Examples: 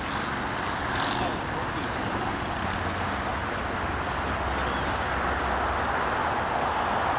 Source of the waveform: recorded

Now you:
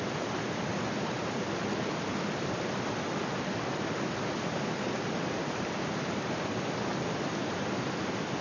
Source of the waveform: recorded